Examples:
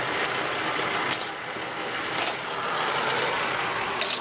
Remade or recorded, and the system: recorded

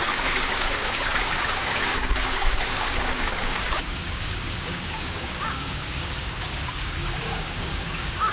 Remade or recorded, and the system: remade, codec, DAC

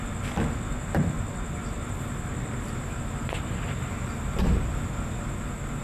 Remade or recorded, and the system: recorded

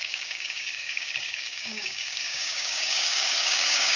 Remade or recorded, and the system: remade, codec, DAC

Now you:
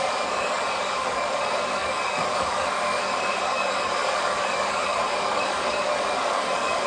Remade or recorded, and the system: remade, codec, DAC